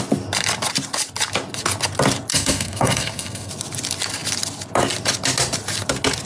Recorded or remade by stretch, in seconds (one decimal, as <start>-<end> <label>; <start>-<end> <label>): 0.0-2.3 recorded; 2.3-3.5 remade; 3.5-6.2 recorded

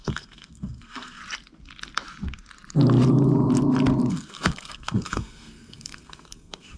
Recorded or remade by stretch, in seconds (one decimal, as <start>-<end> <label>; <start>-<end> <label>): 0.0-1.2 remade; 1.2-4.1 recorded; 4.1-6.8 remade

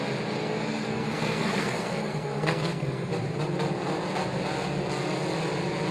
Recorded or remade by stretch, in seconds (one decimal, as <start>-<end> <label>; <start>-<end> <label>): 0.0-0.4 recorded; 0.4-3.1 remade; 3.1-5.9 recorded

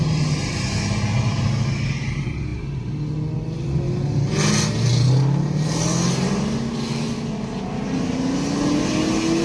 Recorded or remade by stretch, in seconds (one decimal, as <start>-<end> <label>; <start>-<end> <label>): 0.0-9.4 recorded

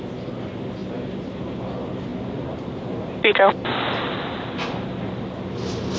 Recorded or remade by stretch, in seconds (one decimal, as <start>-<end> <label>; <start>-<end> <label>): 0.0-6.0 recorded

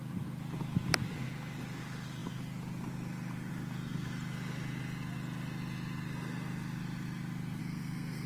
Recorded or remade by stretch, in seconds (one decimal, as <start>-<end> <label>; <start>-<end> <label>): 0.0-7.6 recorded; 7.6-8.3 remade

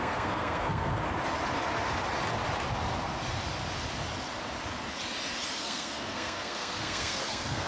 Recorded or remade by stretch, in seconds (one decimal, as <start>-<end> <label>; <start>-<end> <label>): 0.0-1.0 remade; 1.0-5.6 recorded; 5.6-7.7 remade

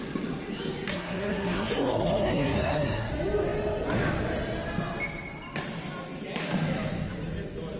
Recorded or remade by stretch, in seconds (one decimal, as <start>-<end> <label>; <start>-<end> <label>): 0.0-0.9 recorded; 0.9-3.1 remade; 3.1-7.8 recorded